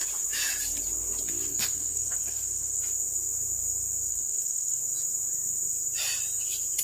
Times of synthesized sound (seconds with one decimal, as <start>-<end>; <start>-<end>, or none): 1.5-2.8; 4.1-4.8